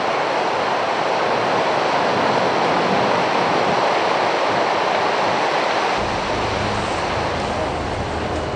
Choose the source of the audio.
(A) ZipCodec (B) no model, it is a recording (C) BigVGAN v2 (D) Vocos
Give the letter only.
B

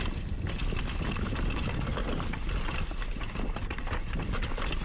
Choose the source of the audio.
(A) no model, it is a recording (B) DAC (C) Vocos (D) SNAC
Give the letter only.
A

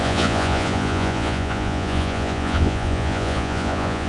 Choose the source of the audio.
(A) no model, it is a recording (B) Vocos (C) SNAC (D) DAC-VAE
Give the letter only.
B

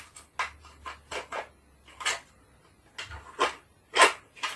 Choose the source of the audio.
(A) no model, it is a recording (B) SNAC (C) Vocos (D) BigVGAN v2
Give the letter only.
A